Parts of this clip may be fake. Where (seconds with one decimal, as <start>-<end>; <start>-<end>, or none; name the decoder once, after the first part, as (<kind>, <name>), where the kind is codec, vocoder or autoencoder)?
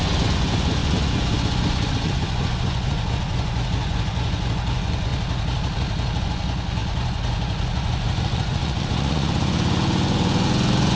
0.0-5.1 (vocoder, Vocos); 6.2-11.0